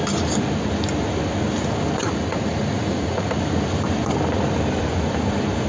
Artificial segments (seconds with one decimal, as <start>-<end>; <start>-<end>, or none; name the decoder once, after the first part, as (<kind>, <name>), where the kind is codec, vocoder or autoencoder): 2.0-3.4 (vocoder, Vocos)